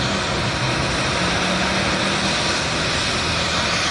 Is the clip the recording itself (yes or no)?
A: yes